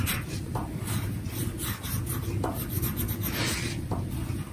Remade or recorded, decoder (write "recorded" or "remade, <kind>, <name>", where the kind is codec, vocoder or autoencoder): recorded